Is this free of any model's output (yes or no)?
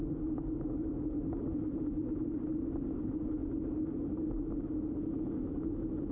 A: yes